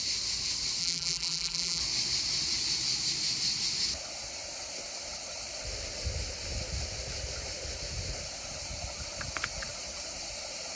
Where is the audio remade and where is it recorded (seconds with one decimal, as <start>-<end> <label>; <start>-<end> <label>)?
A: 0.0-0.8 recorded; 0.8-1.8 remade; 1.8-10.8 recorded